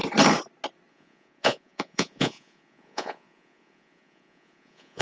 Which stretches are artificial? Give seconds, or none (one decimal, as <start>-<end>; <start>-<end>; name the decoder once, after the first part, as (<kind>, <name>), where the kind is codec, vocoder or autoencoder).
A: 0.9-5.0 (vocoder, Vocos)